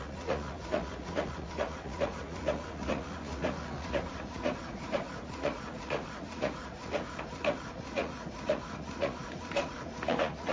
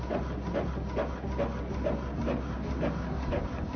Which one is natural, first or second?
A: second